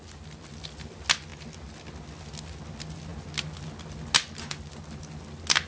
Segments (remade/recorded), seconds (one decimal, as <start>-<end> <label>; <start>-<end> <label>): 0.0-5.7 recorded